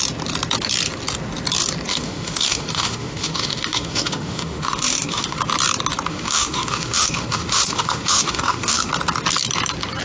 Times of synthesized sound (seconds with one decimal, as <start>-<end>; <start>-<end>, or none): 1.9-5.4; 6.1-8.9